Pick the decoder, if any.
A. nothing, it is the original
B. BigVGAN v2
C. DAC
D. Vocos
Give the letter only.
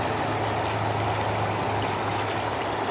A